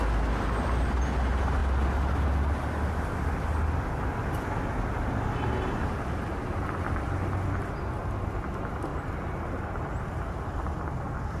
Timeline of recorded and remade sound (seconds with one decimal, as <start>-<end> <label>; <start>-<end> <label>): 0.0-11.4 recorded